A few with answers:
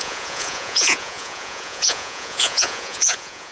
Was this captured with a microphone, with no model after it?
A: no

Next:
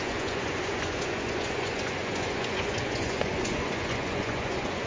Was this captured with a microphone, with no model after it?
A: no